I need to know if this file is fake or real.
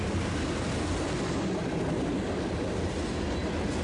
real